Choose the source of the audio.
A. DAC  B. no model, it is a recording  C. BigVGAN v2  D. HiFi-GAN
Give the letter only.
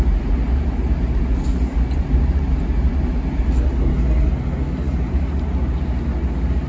B